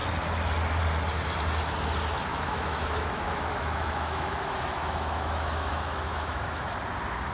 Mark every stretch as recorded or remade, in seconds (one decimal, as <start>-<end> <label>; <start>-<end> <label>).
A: 0.0-2.3 recorded; 2.3-6.7 remade; 6.7-7.3 recorded